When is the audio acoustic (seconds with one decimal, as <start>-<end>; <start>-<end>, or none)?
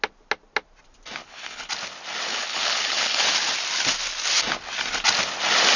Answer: 0.0-1.2; 1.7-2.3; 3.3-5.8